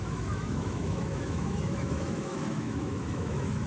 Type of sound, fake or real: fake